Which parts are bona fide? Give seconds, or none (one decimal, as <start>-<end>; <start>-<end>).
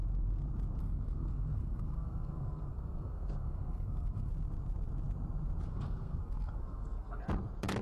0.0-0.8; 4.3-5.7; 7.2-7.8